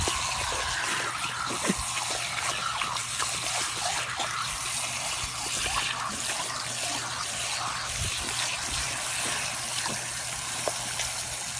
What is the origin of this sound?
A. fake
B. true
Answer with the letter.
B